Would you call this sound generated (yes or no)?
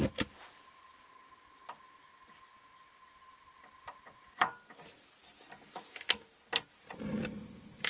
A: no